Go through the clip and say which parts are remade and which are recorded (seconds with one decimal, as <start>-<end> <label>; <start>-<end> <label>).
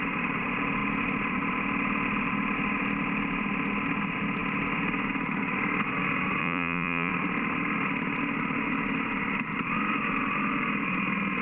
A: 0.0-6.4 recorded; 6.4-7.1 remade; 7.1-11.4 recorded